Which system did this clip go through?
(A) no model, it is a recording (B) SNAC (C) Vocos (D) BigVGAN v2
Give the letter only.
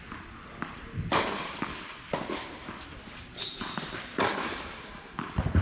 D